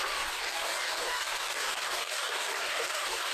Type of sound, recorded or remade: remade